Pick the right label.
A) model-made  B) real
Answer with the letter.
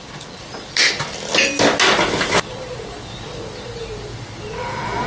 B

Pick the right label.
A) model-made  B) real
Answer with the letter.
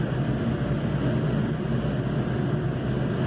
B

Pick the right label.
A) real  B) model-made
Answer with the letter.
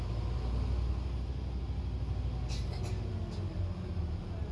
A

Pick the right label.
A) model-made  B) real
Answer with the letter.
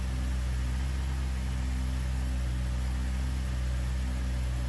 B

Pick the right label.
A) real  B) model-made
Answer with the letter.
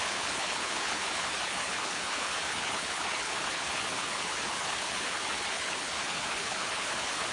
B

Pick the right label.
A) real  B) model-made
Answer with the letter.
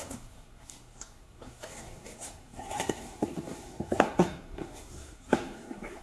B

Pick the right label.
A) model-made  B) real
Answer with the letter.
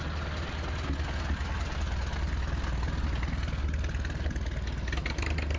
B